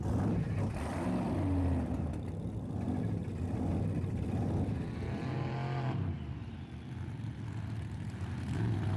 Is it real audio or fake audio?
real